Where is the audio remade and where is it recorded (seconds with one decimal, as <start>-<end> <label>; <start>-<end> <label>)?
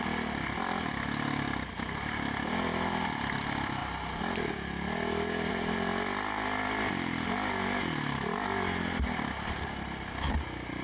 0.0-10.8 recorded